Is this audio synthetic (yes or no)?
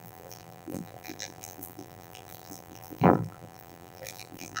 yes